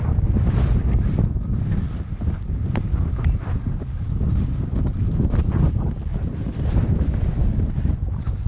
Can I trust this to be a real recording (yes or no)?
yes